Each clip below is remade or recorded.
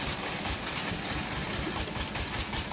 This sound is recorded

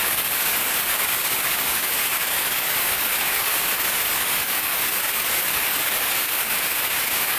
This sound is remade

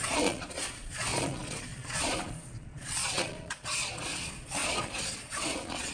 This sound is remade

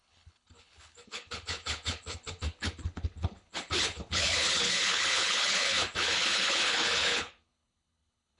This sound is remade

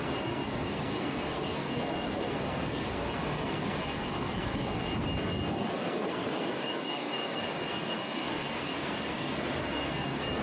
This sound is remade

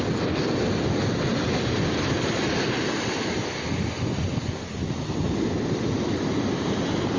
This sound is recorded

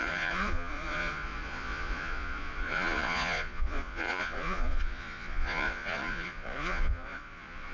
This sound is remade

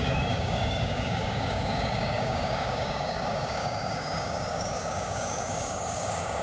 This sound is remade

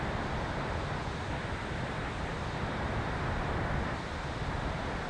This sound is recorded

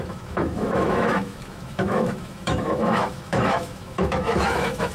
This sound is remade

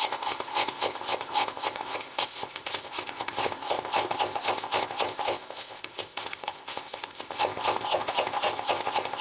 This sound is remade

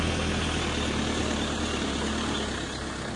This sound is recorded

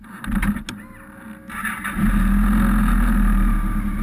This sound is recorded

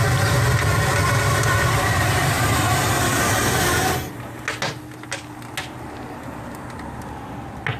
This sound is recorded